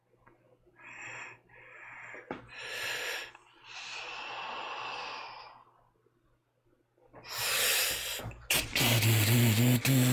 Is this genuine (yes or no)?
yes